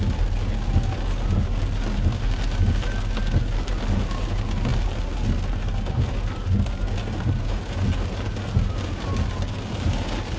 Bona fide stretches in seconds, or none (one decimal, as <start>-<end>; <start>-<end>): 0.0-10.4